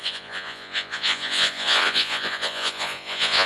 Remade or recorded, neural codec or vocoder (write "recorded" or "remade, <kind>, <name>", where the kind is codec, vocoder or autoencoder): remade, vocoder, Vocos